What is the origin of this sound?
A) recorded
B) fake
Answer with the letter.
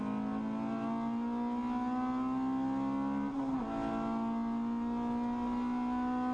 A